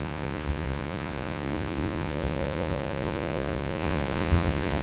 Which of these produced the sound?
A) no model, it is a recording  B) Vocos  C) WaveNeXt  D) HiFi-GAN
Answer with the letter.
B